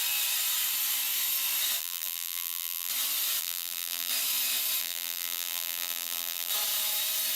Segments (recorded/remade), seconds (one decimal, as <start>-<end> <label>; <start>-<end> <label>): 0.0-1.8 recorded; 1.8-2.9 remade; 2.9-3.4 recorded; 3.4-4.1 remade; 4.1-4.8 recorded; 4.8-6.5 remade; 6.5-7.4 recorded